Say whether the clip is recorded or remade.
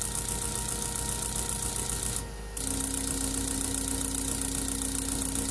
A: recorded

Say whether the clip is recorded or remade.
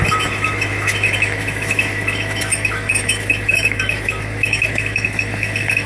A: remade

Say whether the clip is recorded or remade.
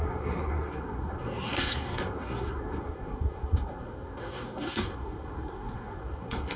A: remade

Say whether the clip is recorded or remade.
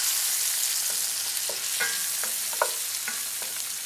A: recorded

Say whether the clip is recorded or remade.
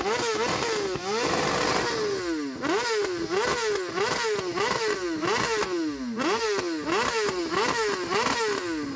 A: recorded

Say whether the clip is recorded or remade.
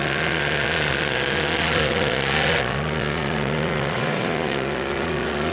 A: remade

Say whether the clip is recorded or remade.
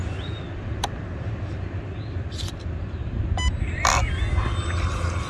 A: recorded